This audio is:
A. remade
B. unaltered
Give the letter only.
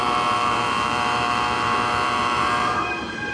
A